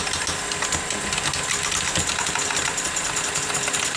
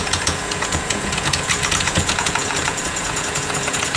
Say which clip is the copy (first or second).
second